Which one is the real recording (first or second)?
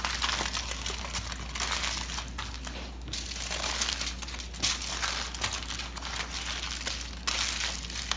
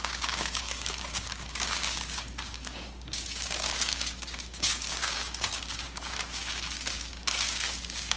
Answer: first